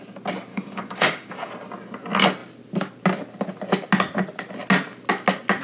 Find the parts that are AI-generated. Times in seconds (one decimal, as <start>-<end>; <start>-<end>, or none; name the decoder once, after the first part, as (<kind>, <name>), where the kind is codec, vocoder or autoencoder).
0.5-1.5 (codec, DAC)